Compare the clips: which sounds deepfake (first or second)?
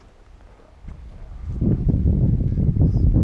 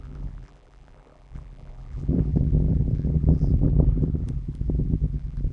second